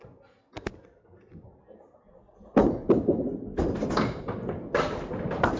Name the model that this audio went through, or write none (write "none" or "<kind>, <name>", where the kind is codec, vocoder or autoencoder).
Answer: none